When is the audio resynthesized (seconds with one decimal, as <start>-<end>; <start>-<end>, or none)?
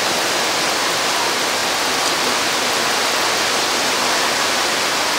none